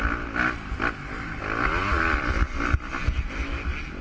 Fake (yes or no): no